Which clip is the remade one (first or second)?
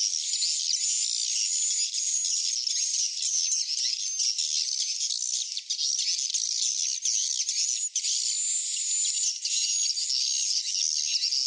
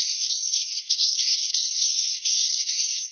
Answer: second